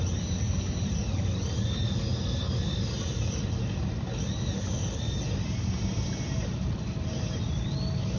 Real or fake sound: real